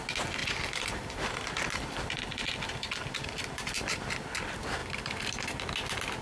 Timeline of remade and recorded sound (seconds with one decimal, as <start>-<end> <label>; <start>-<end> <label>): 0.0-0.4 recorded; 0.4-4.1 remade; 4.1-6.2 recorded